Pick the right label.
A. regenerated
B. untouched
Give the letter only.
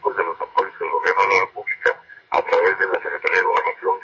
A